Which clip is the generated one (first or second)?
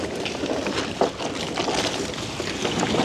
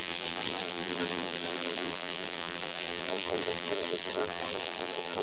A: second